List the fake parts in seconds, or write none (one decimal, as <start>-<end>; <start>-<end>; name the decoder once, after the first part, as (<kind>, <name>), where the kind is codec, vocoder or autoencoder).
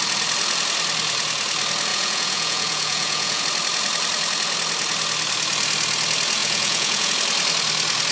1.9-3.4 (vocoder, Vocos); 6.4-7.1